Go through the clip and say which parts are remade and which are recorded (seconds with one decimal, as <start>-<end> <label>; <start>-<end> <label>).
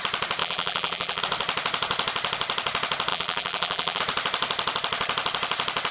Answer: 0.0-0.4 recorded; 0.4-1.2 remade; 1.2-3.1 recorded; 3.1-4.0 remade; 4.0-5.9 recorded